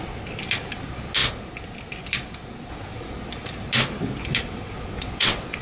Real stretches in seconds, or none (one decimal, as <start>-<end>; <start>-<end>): 0.0-4.5